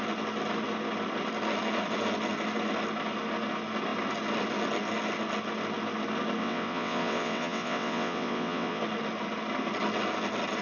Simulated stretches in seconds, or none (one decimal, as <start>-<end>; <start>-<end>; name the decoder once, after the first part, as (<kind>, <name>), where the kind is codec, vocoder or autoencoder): 6.4-8.8 (vocoder, WaveNeXt)